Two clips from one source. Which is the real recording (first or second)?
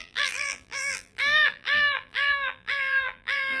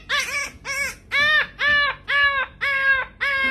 second